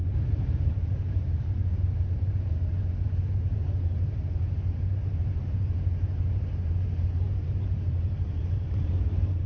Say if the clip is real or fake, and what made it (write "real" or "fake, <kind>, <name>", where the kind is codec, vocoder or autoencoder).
fake, vocoder, BigVGAN v2